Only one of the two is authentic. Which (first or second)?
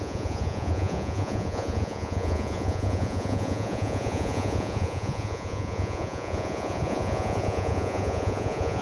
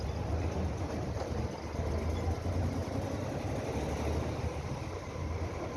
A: second